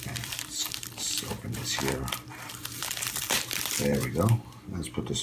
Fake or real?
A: fake